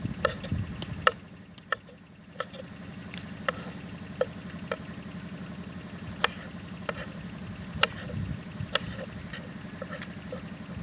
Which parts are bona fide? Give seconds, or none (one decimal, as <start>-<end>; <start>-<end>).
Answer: 0.0-10.8